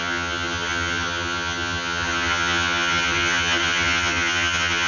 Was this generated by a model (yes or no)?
yes